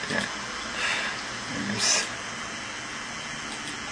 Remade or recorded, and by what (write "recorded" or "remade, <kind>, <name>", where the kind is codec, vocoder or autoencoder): recorded